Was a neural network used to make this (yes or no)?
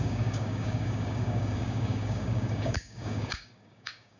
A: yes